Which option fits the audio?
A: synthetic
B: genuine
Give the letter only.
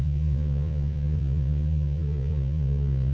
A